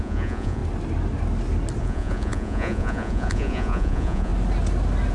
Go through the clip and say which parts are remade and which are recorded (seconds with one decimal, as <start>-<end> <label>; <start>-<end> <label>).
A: 0.0-0.6 remade; 0.6-1.8 recorded; 1.8-4.3 remade; 4.3-5.1 recorded